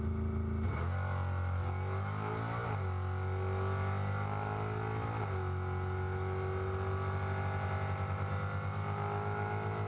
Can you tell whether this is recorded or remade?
recorded